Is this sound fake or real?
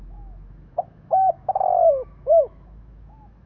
fake